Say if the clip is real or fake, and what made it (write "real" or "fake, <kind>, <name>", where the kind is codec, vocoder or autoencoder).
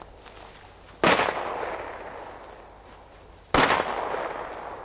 real